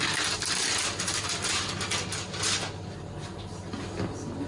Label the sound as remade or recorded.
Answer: recorded